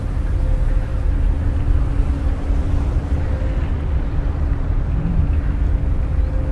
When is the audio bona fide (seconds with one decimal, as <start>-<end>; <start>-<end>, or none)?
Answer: 0.0-0.9; 3.0-6.5